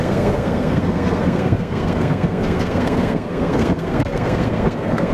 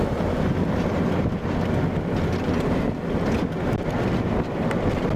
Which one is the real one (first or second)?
second